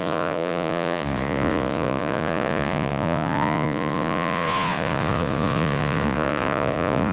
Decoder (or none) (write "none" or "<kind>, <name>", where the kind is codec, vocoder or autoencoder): vocoder, Vocos